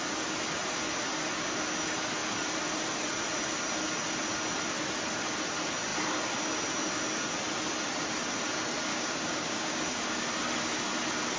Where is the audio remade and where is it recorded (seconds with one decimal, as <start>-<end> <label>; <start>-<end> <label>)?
0.0-8.9 recorded; 8.9-9.8 remade; 9.8-11.4 recorded